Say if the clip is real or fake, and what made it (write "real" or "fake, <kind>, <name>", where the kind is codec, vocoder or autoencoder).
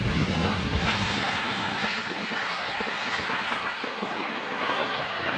fake, codec, SNAC